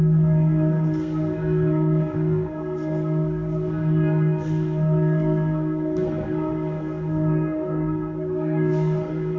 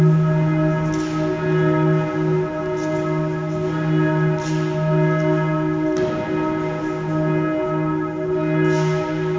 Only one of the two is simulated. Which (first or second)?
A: first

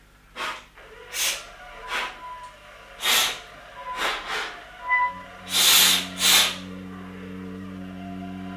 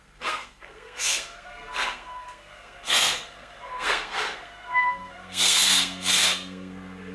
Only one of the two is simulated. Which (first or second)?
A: second